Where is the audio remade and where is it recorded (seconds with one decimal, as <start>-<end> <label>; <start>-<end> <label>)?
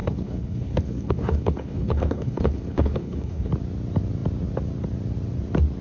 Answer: 0.0-3.5 remade; 3.5-5.8 recorded